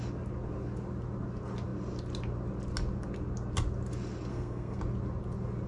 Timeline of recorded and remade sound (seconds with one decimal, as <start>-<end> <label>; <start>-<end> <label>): 0.0-4.3 recorded; 4.3-4.8 remade; 4.8-5.7 recorded